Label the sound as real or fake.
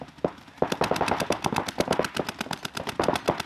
real